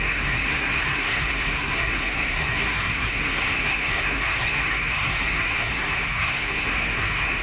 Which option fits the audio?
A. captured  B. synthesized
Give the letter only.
B